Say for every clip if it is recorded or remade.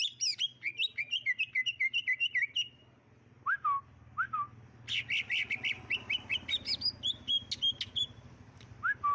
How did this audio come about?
recorded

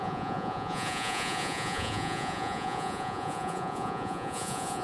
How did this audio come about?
remade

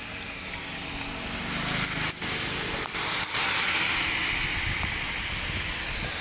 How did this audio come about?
recorded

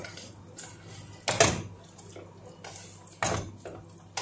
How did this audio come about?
recorded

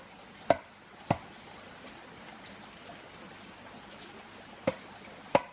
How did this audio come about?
recorded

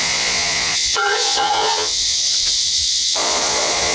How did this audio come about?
remade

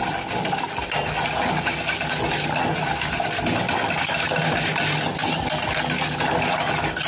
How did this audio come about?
recorded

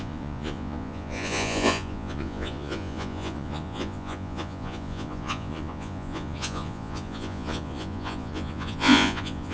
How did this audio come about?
remade